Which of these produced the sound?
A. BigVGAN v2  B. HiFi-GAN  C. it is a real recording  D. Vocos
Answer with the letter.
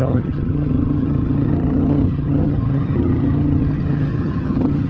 B